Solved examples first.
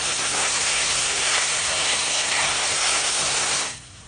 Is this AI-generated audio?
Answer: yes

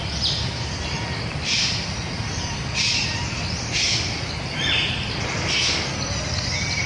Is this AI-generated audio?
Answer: no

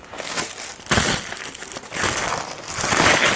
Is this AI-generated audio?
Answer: no